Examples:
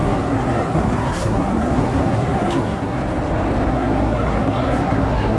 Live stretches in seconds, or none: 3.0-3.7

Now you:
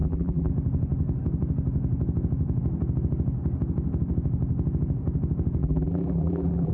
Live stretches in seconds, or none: 0.5-5.6

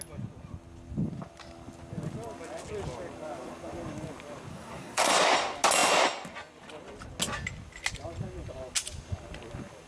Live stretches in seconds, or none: 0.0-4.5; 5.1-9.9

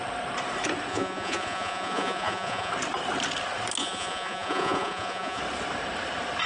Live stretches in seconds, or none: 0.0-0.9; 2.7-3.8; 5.4-6.5